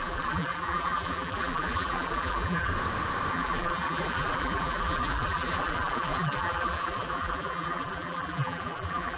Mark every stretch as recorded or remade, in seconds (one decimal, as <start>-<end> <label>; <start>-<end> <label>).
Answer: 0.0-2.7 remade; 2.7-3.3 recorded; 3.3-9.2 remade